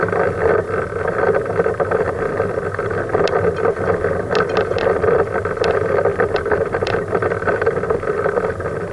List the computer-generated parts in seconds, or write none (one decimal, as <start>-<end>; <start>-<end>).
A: 6.1-7.1